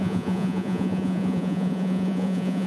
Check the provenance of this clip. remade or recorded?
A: remade